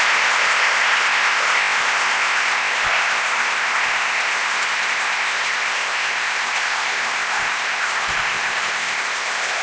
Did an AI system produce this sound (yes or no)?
yes